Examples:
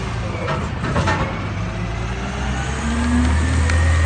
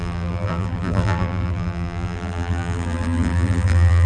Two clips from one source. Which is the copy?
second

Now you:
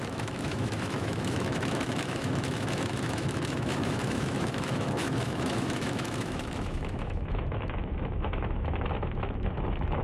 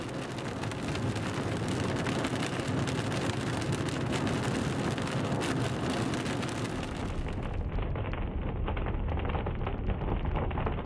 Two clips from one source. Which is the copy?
first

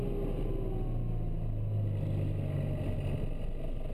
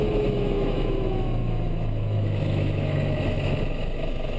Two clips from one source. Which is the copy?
second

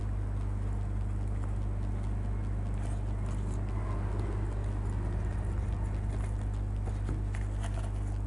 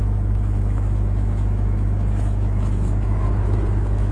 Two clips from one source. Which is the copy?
second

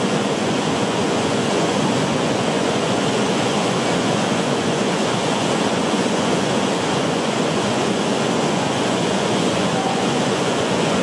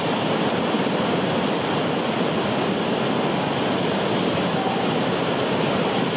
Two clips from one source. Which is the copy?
first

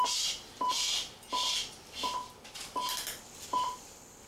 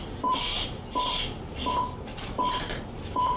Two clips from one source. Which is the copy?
second